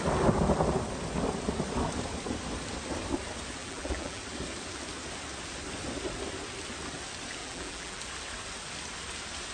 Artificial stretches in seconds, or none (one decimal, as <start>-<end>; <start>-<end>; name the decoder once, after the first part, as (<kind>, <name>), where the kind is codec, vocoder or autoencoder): 3.6-4.2 (vocoder, BigVGAN v2); 7.4-8.0